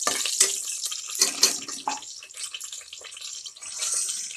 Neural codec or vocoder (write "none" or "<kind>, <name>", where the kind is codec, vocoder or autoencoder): none